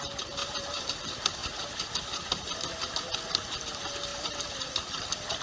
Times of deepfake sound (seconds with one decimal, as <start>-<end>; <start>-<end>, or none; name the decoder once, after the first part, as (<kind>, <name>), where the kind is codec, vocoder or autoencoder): none